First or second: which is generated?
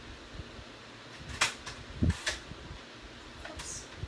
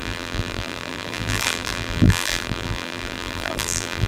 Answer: second